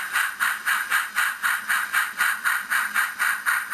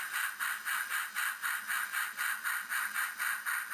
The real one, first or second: second